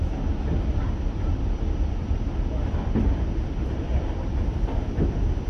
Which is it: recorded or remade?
remade